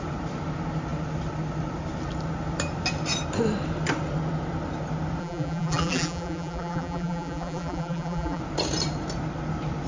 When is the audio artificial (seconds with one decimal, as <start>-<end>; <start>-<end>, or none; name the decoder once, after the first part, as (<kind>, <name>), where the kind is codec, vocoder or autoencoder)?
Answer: 5.2-8.4 (vocoder, BigVGAN v2)